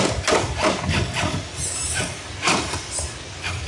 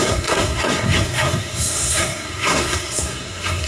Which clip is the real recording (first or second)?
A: first